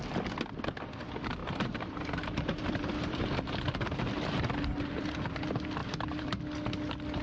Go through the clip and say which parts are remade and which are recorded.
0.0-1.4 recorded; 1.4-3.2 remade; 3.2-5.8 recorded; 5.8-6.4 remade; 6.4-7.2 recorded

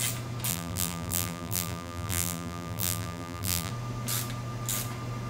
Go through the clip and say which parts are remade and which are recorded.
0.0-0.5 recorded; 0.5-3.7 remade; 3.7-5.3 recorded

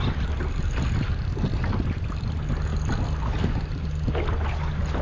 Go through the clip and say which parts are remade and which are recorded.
0.0-5.0 recorded